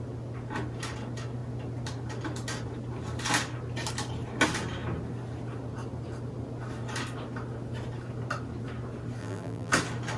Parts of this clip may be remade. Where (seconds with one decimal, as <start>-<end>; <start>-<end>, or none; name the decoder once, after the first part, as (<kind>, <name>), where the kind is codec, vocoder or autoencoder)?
9.2-9.7 (vocoder, BigVGAN v2)